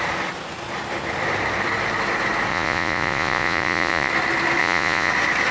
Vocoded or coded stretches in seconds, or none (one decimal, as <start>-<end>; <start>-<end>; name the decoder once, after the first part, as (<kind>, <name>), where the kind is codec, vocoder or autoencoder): 2.5-4.1 (vocoder, Vocos); 4.6-5.1